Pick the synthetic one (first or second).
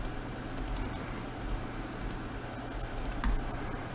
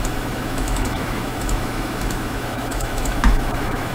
second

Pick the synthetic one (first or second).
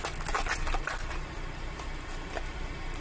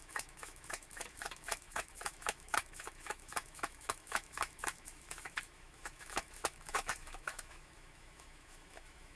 second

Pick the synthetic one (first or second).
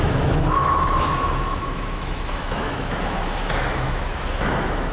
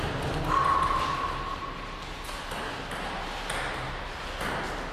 first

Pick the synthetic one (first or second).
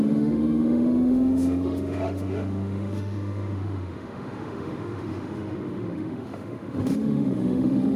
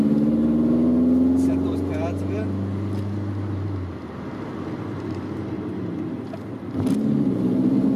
first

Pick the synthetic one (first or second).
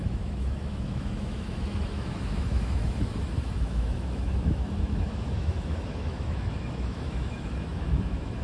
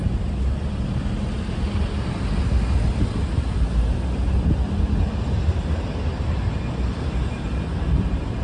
first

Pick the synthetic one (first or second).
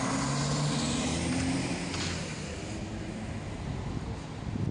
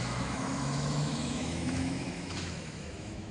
second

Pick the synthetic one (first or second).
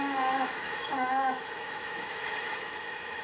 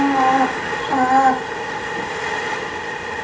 first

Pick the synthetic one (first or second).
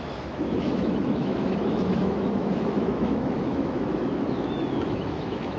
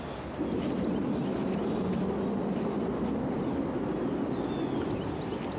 first